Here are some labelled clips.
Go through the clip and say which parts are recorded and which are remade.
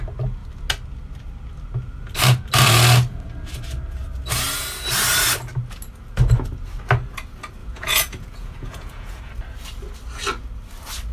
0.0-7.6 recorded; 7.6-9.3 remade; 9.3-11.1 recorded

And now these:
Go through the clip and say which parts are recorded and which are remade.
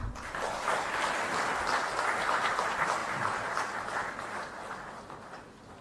0.0-5.8 recorded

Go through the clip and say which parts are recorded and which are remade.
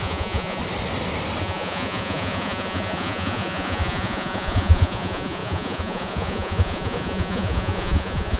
0.0-0.6 remade; 0.6-1.4 recorded; 1.4-8.4 remade